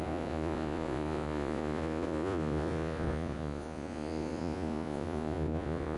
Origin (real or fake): fake